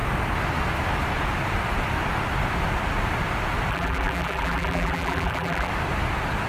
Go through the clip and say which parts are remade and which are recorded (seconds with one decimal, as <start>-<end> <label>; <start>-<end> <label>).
0.0-3.7 recorded; 3.7-5.7 remade; 5.7-6.5 recorded